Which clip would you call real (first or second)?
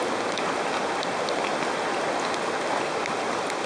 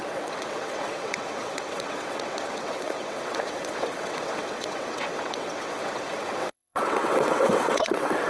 first